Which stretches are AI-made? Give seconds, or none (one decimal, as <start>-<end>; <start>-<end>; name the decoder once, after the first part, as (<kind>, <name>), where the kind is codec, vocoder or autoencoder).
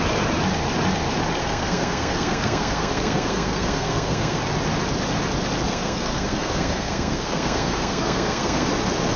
1.4-4.4 (codec, SNAC); 5.7-8.7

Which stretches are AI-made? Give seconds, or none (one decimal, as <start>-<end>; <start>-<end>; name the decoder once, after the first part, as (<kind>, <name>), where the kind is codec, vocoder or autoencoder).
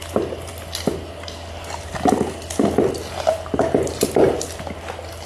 none